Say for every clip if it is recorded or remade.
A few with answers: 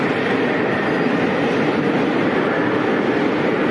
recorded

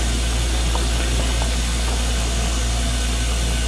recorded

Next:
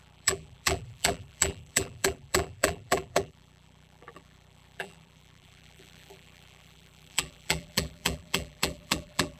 remade